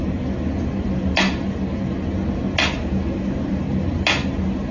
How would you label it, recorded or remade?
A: recorded